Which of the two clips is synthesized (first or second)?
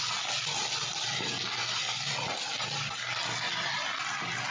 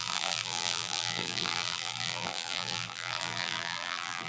second